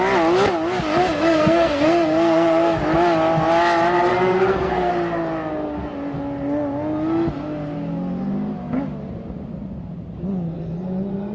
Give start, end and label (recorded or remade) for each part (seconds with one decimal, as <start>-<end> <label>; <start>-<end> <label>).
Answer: 0.0-1.0 recorded; 1.0-2.8 remade; 2.8-4.1 recorded; 4.1-4.9 remade; 4.9-11.3 recorded